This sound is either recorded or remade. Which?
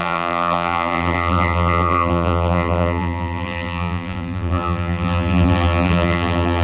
remade